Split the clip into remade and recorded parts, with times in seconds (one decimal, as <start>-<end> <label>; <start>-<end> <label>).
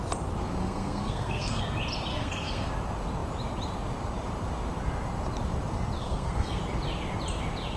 0.0-0.6 recorded; 0.6-1.6 remade; 1.6-2.1 recorded; 2.1-2.7 remade; 2.7-6.0 recorded; 6.0-6.6 remade; 6.6-7.8 recorded